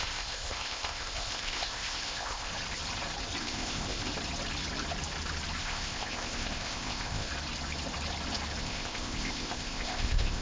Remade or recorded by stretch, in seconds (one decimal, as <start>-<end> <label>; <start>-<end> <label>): 0.0-2.5 remade; 2.5-3.4 recorded; 3.4-4.1 remade; 4.1-5.6 recorded; 5.6-7.3 remade; 7.3-8.6 recorded; 8.6-10.4 remade

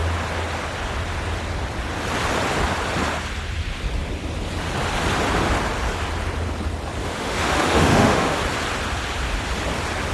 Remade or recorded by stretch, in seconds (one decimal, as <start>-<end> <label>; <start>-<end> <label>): 0.0-7.0 recorded; 7.0-8.4 remade; 8.4-10.1 recorded

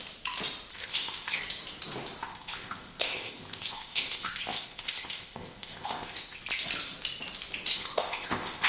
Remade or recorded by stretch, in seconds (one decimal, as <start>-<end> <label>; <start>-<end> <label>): 0.0-0.7 recorded; 0.7-1.4 remade; 1.4-2.2 recorded; 2.2-6.4 remade; 6.4-7.7 recorded; 7.7-8.7 remade

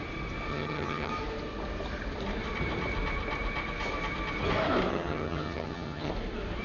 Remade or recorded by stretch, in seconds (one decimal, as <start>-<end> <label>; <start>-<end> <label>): 0.0-0.5 recorded; 0.5-1.1 remade; 1.1-4.9 recorded; 4.9-6.1 remade; 6.1-6.6 recorded

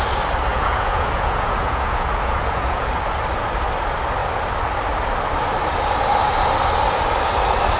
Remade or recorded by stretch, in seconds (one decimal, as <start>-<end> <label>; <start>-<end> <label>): 0.0-0.5 recorded; 0.5-2.9 remade; 2.9-7.8 recorded

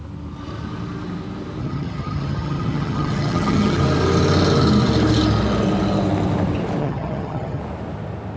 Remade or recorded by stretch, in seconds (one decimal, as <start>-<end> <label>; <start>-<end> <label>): 0.0-1.6 recorded; 1.6-3.8 remade; 3.8-6.8 recorded; 6.8-7.6 remade; 7.6-8.4 recorded

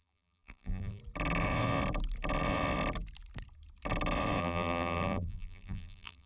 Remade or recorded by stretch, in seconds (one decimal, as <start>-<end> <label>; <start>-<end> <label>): 0.0-1.0 remade; 1.0-4.4 recorded; 4.4-6.3 remade